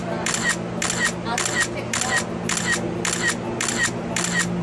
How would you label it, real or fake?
real